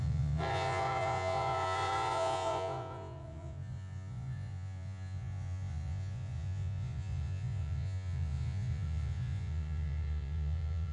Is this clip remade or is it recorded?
remade